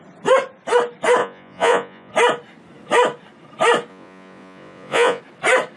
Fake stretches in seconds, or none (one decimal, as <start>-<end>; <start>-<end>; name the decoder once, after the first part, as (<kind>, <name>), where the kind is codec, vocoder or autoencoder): 1.2-2.1 (vocoder, Vocos); 3.9-5.2